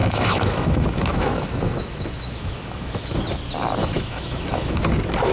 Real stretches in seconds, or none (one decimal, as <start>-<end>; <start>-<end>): 3.2-3.8; 4.8-5.3